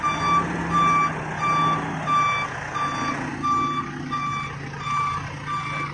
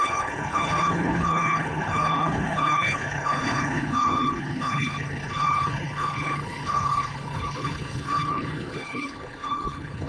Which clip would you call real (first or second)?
first